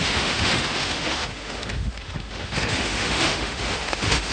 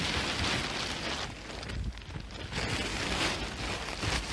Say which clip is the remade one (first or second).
first